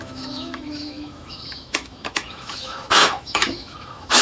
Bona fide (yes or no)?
no